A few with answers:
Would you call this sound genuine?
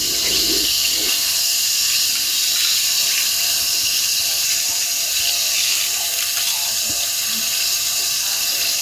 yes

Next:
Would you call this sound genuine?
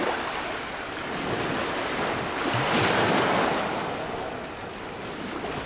yes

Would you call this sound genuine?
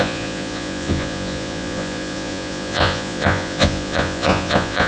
no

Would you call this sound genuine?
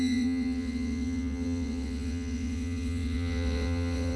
no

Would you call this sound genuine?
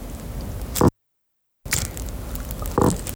yes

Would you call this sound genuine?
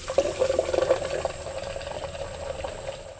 yes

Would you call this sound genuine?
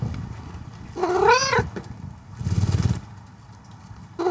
yes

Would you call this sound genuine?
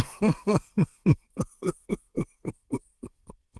no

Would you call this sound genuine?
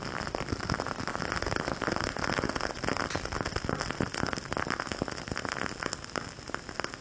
yes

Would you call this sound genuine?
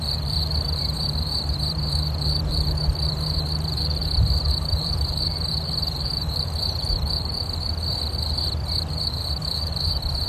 no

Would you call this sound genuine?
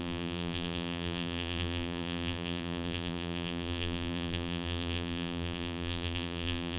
no